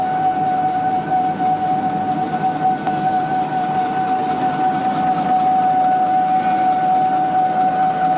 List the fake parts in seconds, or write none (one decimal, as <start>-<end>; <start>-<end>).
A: none